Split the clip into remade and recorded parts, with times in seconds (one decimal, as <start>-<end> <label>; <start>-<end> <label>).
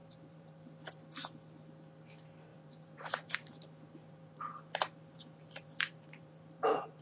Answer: 0.0-0.7 remade; 0.7-2.5 recorded; 2.5-7.0 remade